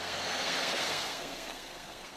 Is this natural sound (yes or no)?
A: no